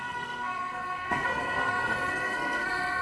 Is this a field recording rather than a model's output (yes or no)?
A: no